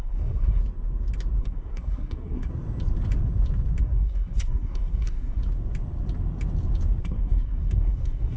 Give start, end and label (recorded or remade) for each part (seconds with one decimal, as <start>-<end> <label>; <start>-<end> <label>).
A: 0.0-0.6 remade; 0.6-1.4 recorded; 1.4-2.5 remade; 2.5-3.8 recorded; 3.8-5.4 remade; 5.4-7.0 recorded; 7.0-8.4 remade